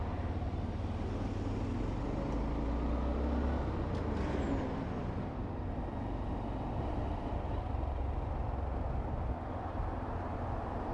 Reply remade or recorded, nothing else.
recorded